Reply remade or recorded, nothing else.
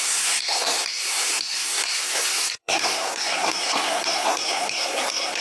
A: remade